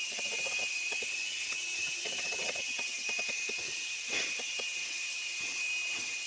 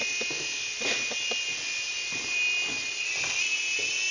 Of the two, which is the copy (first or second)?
first